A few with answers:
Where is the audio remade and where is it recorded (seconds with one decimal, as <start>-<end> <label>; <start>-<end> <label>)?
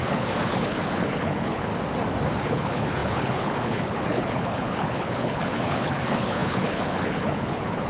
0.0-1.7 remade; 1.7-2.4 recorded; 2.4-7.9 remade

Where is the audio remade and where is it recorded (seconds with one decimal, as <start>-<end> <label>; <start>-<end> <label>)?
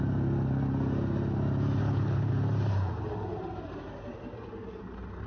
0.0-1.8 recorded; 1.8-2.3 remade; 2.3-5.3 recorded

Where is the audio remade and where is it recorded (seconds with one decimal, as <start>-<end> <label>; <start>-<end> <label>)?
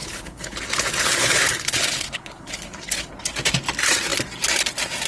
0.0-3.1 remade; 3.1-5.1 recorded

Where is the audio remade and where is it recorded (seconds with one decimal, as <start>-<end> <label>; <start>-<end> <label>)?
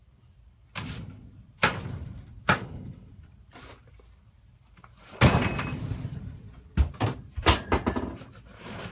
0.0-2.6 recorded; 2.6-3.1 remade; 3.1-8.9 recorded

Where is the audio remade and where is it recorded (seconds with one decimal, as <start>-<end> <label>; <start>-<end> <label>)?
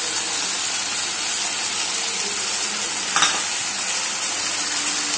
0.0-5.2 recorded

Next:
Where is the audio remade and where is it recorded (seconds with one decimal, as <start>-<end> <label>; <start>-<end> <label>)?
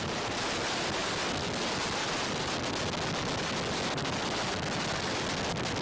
0.0-5.8 recorded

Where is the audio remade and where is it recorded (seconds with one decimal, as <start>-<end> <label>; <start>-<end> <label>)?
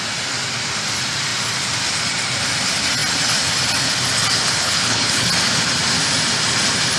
0.0-4.4 recorded; 4.4-5.3 remade; 5.3-7.0 recorded